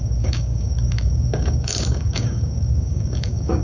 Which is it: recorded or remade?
remade